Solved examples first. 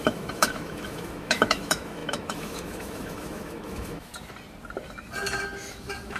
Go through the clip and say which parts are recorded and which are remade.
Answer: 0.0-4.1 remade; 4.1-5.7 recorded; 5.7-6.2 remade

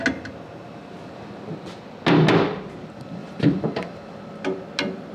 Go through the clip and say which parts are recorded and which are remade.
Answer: 0.0-3.2 recorded; 3.2-4.0 remade; 4.0-5.1 recorded